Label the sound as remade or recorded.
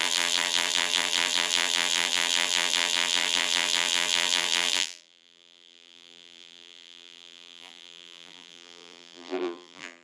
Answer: remade